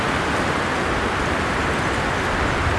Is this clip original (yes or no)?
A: no